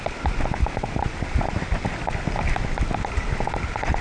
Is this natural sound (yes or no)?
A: yes